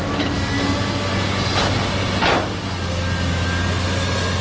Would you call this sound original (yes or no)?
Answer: yes